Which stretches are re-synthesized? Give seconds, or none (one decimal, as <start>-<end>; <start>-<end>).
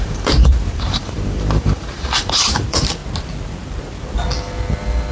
0.0-3.0